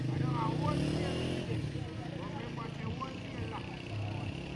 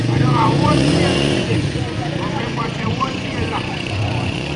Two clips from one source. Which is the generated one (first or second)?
second